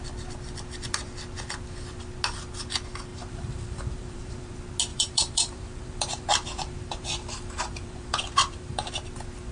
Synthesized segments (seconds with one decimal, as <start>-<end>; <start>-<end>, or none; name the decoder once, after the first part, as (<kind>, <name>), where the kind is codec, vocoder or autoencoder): 3.1-4.5 (vocoder, BigVGAN v2); 4.9-8.9